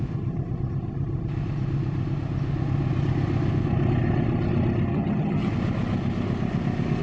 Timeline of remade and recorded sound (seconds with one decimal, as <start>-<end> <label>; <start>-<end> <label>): 0.0-4.9 recorded; 4.9-5.5 remade; 5.5-7.0 recorded